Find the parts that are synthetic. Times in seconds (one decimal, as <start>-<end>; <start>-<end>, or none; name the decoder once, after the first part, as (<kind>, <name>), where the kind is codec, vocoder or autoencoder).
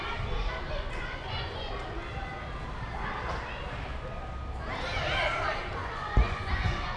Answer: 0.7-1.7 (vocoder, Vocos); 5.8-7.0